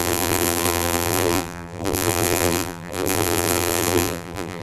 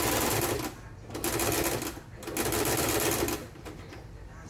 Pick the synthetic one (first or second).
first